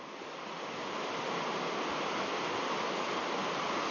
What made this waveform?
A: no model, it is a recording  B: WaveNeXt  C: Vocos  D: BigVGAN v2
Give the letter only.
A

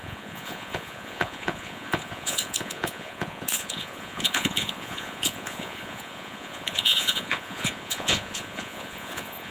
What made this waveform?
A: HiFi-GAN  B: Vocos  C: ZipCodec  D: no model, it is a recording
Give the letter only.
B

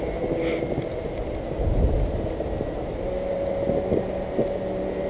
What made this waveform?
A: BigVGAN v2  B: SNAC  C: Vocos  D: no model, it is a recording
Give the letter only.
D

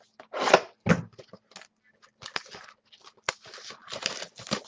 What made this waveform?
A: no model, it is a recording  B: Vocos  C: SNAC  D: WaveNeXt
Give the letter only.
A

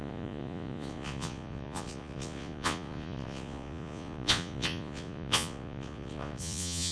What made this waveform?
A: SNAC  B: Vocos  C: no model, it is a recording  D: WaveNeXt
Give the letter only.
B